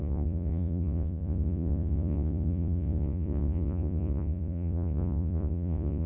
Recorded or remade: remade